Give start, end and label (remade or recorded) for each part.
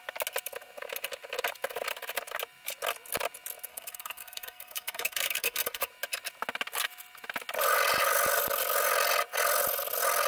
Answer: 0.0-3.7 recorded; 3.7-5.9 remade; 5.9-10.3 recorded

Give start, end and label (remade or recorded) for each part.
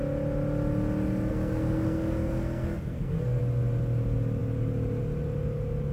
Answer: 0.0-1.3 recorded; 1.3-3.4 remade; 3.4-5.9 recorded